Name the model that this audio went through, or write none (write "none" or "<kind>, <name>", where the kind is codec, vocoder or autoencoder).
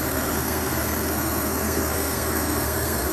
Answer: codec, SNAC